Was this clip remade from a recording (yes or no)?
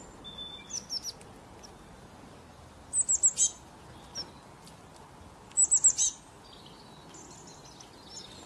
no